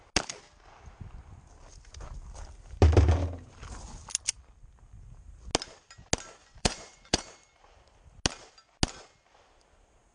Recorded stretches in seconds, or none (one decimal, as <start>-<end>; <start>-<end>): 0.0-6.4; 7.2-10.1